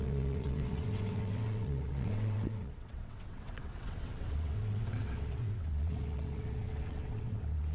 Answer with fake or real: fake